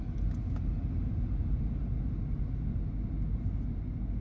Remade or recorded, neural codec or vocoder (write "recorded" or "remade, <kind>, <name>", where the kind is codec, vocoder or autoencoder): recorded